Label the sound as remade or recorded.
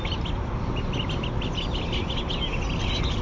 recorded